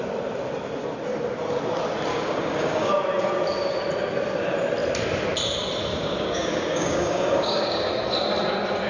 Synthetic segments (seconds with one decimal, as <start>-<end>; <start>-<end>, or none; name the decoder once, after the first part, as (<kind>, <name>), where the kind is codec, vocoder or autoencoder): 2.1-2.9 (codec, DAC); 5.9-7.9

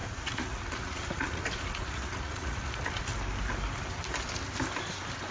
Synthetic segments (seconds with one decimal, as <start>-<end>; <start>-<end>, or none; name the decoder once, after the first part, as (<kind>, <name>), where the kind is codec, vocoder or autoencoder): 0.0-3.1 (vocoder, Vocos)

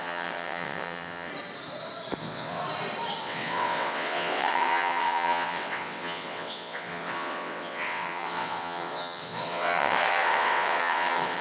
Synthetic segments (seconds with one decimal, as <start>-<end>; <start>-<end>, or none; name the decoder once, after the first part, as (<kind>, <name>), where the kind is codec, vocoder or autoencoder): 0.0-1.3 (vocoder, WaveNeXt); 2.2-2.6; 3.2-11.4

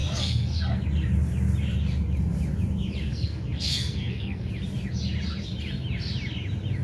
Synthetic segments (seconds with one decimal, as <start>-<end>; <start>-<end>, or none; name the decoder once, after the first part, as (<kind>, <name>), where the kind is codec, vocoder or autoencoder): 0.0-0.8 (codec, SNAC); 3.1-4.5

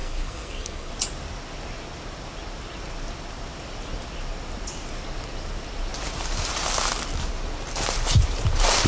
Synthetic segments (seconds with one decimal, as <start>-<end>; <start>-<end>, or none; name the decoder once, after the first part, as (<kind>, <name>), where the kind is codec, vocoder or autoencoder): 0.0-0.9 (codec, SNAC)

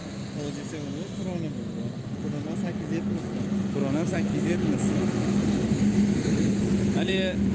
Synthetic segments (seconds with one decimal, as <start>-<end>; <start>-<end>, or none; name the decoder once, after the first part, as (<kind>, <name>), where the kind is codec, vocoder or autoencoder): none

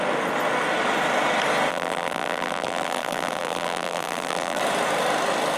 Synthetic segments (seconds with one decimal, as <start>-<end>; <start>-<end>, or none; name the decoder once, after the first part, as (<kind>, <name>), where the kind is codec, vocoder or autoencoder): 1.7-4.6 (vocoder, BigVGAN v2)